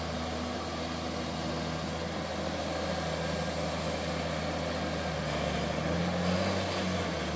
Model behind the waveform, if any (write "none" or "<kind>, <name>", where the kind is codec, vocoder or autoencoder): none